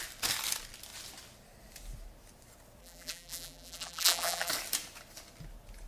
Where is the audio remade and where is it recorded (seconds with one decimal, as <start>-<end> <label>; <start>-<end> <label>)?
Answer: 0.0-2.8 recorded; 2.8-4.5 remade; 4.5-5.9 recorded